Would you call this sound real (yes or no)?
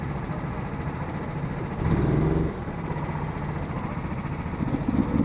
yes